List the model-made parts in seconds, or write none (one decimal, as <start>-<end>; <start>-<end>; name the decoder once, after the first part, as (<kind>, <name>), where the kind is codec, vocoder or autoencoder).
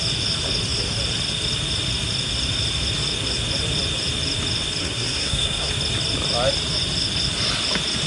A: 4.8-5.7 (codec, SNAC)